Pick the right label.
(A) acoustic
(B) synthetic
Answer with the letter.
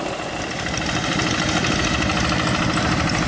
A